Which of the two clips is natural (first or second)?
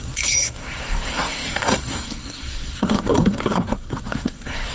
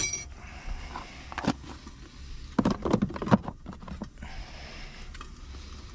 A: second